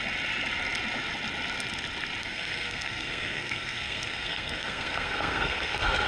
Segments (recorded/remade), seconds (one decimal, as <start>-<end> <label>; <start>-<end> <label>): 0.0-2.2 recorded; 2.2-6.1 remade